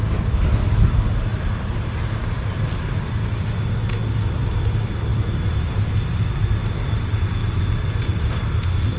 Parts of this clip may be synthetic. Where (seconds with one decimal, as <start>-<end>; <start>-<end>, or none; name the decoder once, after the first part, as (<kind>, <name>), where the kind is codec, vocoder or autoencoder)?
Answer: 5.1-5.8 (vocoder, BigVGAN v2)